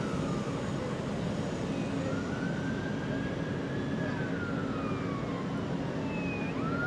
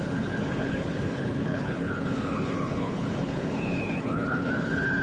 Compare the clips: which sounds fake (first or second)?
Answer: second